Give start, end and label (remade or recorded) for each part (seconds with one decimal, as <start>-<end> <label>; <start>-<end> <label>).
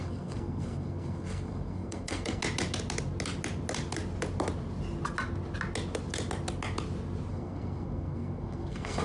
0.0-2.4 remade; 2.4-7.3 recorded; 7.3-9.0 remade